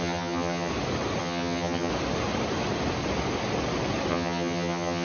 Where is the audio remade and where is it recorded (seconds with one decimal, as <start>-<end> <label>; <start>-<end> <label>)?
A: 0.0-0.7 remade; 0.7-1.2 recorded; 1.2-1.9 remade; 1.9-4.1 recorded; 4.1-5.0 remade